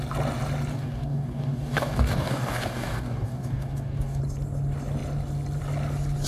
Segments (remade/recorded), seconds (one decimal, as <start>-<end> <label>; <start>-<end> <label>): 0.0-0.7 recorded; 0.7-4.2 remade; 4.2-6.3 recorded

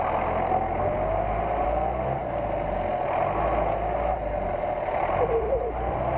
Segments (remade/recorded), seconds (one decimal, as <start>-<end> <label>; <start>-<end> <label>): 0.0-6.2 recorded

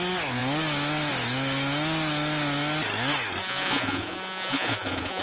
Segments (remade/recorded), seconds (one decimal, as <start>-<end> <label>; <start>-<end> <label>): 0.0-3.4 recorded; 3.4-5.2 remade